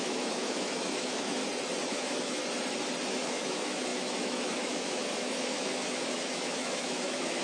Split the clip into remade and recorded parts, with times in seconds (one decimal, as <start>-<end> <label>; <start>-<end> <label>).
0.0-1.4 remade; 1.4-1.9 recorded; 1.9-2.4 remade; 2.4-3.1 recorded; 3.1-7.4 remade